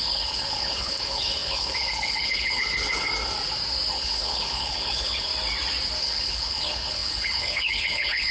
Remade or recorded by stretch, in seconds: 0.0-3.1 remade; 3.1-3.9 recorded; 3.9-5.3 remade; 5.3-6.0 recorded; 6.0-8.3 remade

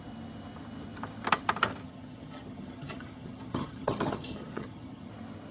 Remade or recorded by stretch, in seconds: 0.0-1.8 recorded; 1.8-5.1 remade; 5.1-5.5 recorded

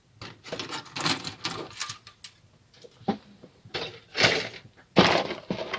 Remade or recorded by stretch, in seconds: 0.0-5.8 recorded

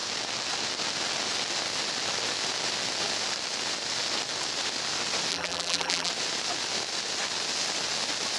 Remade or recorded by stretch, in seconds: 0.0-5.3 recorded; 5.3-6.1 remade; 6.1-8.4 recorded

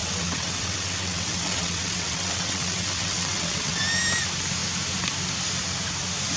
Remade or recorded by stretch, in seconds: 0.0-3.8 remade; 3.8-6.4 recorded

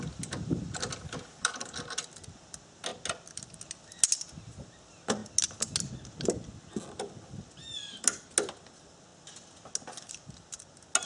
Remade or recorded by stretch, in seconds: 0.0-11.1 recorded

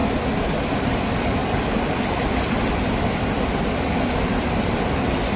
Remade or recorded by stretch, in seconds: 0.0-5.4 recorded

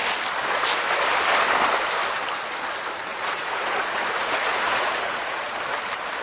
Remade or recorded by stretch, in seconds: 0.0-3.1 recorded; 3.1-5.6 remade; 5.6-6.2 recorded